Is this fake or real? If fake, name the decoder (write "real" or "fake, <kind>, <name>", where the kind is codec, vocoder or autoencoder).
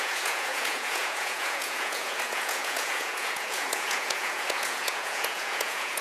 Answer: fake, vocoder, Vocos